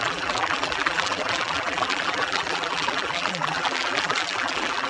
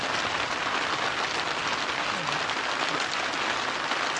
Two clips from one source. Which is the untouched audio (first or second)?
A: second